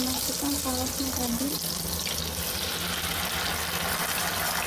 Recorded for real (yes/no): yes